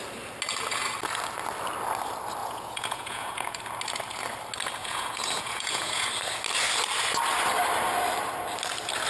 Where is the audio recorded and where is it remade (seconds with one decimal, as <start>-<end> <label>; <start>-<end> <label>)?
0.0-2.4 recorded; 2.4-3.6 remade; 3.6-4.8 recorded; 4.8-6.1 remade; 6.1-9.1 recorded